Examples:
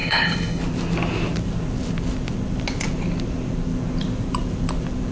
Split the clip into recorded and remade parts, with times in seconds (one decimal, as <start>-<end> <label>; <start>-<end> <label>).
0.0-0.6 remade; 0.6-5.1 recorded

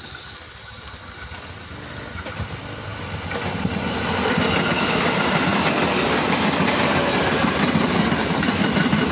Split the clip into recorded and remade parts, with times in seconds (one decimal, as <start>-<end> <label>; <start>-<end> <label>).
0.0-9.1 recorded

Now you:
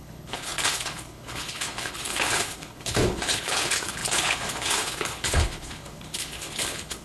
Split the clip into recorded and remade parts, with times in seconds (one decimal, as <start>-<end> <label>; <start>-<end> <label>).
0.0-7.0 remade

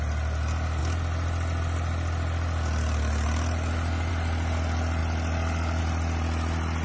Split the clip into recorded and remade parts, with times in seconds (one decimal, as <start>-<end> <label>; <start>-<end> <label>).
0.0-6.8 recorded

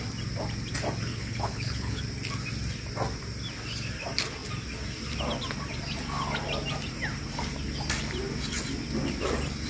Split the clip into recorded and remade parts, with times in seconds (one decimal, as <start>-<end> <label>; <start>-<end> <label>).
0.0-1.1 recorded; 1.1-2.0 remade; 2.0-9.7 recorded

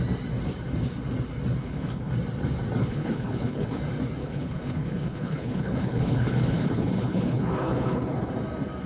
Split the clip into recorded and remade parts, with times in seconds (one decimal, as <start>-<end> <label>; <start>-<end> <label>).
0.0-1.6 recorded; 1.6-2.1 remade; 2.1-2.8 recorded; 2.8-3.8 remade; 3.8-4.2 recorded; 4.2-8.3 remade; 8.3-8.9 recorded